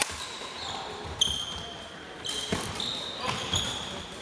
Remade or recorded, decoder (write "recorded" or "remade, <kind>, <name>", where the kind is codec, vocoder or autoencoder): remade, vocoder, BigVGAN v2